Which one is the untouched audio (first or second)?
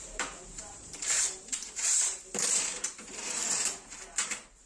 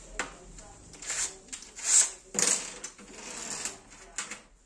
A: second